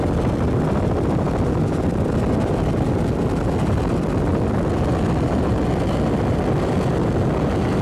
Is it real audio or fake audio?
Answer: real